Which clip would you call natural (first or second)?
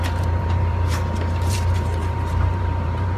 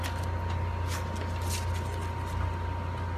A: second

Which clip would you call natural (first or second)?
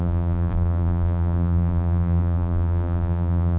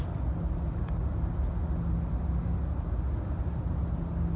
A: second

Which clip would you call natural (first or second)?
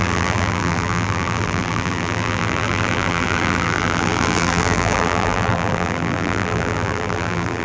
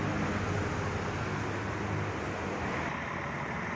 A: second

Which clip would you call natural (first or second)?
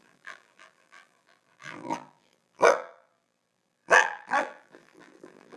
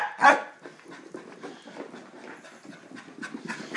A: second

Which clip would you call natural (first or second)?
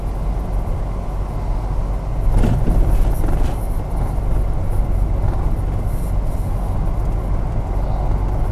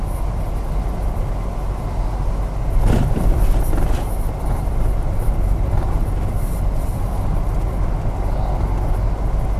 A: first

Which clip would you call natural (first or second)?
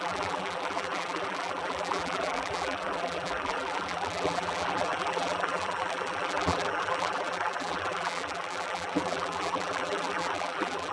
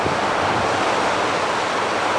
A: second